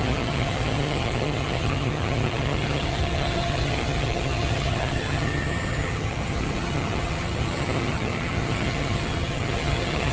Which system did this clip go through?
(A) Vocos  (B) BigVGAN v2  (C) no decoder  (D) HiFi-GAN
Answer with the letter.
D